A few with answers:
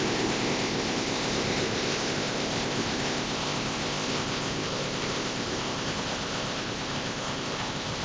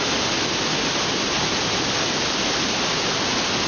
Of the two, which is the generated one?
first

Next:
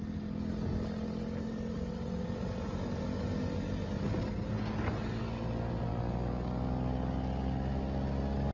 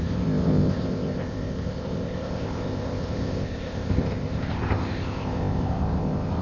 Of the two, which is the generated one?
second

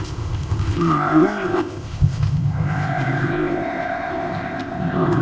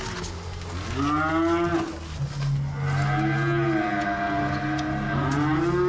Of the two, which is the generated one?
first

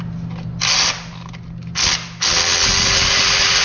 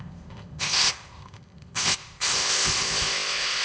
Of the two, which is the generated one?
second